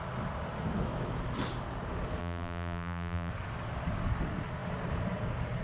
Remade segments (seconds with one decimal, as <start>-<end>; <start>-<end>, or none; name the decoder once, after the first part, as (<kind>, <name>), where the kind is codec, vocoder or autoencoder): 2.2-3.3 (vocoder, BigVGAN v2)